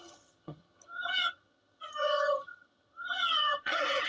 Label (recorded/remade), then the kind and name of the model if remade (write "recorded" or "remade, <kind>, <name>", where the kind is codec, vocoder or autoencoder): remade, vocoder, HiFi-GAN